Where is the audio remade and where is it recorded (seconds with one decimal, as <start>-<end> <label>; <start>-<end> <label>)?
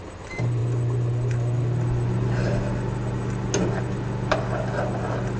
0.0-5.4 recorded